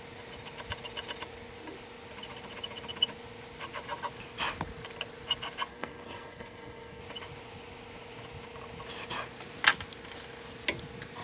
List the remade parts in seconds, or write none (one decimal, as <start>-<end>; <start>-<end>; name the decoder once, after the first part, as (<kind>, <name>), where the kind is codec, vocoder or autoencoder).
5.7-7.0 (codec, SNAC)